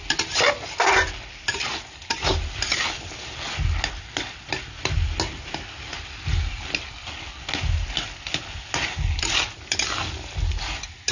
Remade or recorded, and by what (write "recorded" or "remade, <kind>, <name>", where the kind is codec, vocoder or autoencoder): recorded